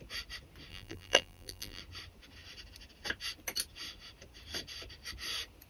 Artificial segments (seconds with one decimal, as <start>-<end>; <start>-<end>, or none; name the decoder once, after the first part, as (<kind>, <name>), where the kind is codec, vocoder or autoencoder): 0.7-1.8 (vocoder, BigVGAN v2)